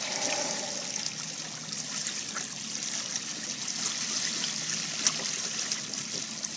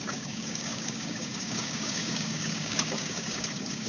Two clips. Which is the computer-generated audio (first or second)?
second